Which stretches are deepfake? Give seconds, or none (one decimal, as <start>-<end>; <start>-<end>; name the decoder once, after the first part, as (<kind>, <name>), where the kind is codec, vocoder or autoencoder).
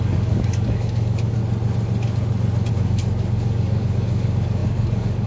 0.0-1.4 (codec, DAC); 2.7-5.3